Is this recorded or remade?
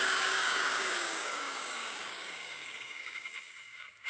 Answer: remade